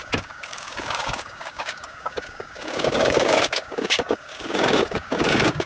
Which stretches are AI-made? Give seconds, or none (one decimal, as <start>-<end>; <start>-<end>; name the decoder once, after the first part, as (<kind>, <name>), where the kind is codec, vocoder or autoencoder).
0.0-5.7 (codec, DAC)